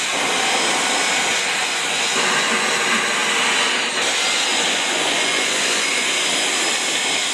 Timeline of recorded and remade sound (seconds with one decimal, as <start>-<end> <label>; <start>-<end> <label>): 0.0-1.6 recorded; 1.6-2.7 remade; 2.7-4.5 recorded; 4.5-6.1 remade; 6.1-7.3 recorded